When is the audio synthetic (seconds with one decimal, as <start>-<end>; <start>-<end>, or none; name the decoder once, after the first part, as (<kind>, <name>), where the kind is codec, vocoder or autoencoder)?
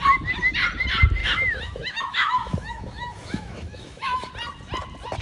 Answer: 1.2-4.3 (autoencoder, DAC-VAE)